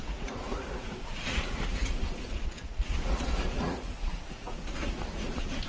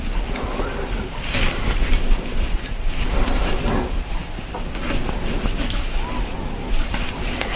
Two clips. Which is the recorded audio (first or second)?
second